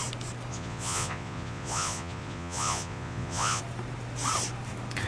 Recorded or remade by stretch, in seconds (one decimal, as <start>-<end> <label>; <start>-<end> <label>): 0.0-0.5 recorded; 0.5-3.6 remade; 3.6-5.1 recorded